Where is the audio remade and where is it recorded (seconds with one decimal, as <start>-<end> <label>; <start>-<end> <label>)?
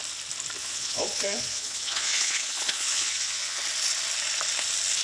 0.0-0.6 recorded; 0.6-3.6 remade; 3.6-5.0 recorded